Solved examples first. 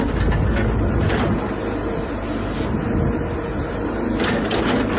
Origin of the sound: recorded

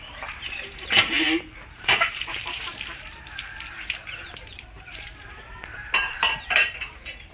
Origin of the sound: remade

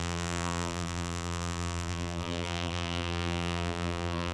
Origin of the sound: remade